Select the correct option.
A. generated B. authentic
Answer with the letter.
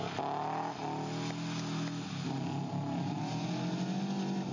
B